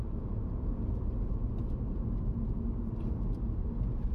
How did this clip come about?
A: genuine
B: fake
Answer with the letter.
A